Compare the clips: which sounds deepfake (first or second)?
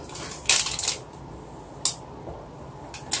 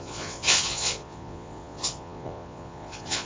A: second